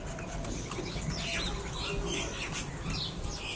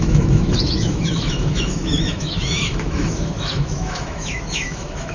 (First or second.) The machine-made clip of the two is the second